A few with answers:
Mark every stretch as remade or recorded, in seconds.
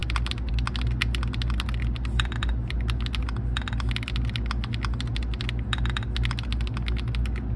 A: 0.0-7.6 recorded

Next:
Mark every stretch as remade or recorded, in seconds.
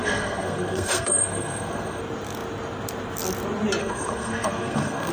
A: 0.0-2.0 remade; 2.0-3.8 recorded; 3.8-5.1 remade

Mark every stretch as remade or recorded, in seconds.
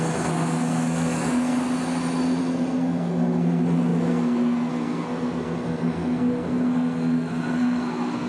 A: 0.0-1.5 remade; 1.5-2.4 recorded; 2.4-8.3 remade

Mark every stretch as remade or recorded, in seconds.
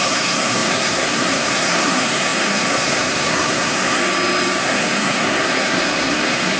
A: 0.0-4.0 remade; 4.0-4.6 recorded; 4.6-6.6 remade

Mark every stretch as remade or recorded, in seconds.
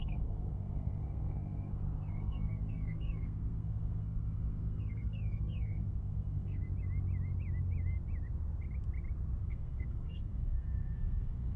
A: 0.0-6.6 remade; 6.6-9.4 recorded; 9.4-11.6 remade